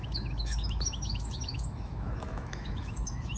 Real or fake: fake